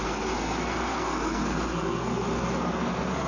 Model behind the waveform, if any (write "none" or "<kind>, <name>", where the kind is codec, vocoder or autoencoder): codec, SNAC